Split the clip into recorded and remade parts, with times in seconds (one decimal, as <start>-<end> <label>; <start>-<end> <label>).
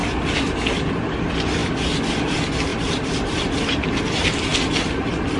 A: 0.0-2.7 recorded; 2.7-4.0 remade; 4.0-5.4 recorded